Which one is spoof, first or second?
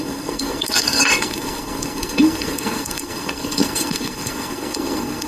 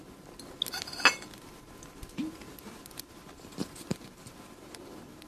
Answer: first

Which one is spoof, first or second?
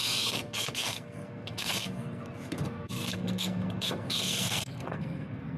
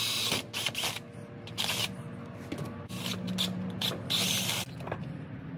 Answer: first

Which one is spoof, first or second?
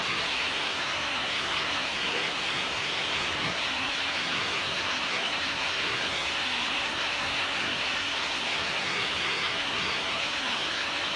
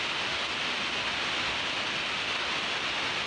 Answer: first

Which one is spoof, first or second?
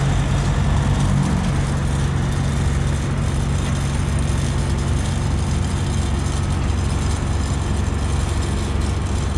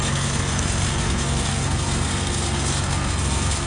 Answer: second